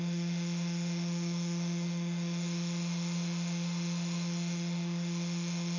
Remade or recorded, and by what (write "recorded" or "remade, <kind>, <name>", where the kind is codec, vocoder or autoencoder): remade, autoencoder, DAC-VAE